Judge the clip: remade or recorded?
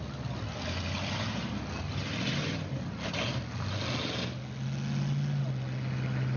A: recorded